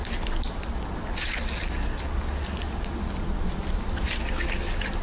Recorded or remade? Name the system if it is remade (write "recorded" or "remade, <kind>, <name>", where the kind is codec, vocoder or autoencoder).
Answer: recorded